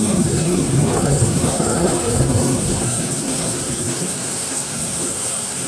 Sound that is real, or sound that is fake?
fake